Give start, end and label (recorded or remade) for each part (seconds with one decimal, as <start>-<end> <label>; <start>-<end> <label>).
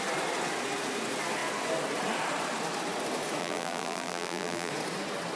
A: 0.0-3.4 recorded; 3.4-4.7 remade; 4.7-5.4 recorded